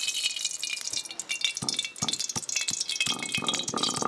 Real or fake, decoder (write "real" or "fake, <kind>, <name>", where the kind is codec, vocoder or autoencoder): real